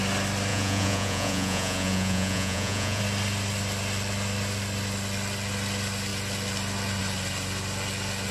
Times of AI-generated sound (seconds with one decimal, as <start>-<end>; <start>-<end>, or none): 0.5-3.0